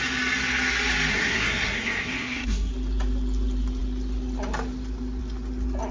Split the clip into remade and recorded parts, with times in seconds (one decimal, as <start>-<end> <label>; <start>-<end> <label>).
0.0-1.1 recorded; 1.1-2.7 remade; 2.7-5.9 recorded